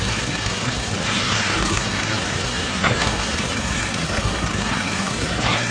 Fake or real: fake